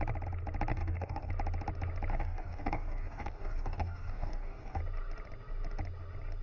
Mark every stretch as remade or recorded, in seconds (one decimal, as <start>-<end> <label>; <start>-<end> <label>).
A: 0.0-0.7 recorded; 0.7-1.3 remade; 1.3-2.1 recorded; 2.1-4.8 remade; 4.8-6.4 recorded